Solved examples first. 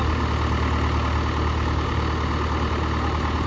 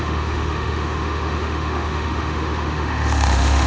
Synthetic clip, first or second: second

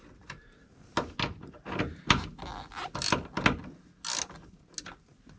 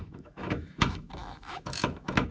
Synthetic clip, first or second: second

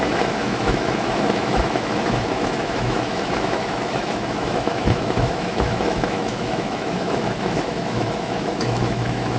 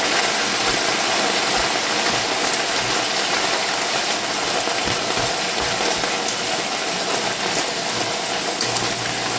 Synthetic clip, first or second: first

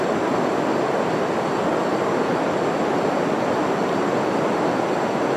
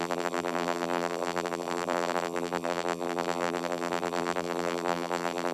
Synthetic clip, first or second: second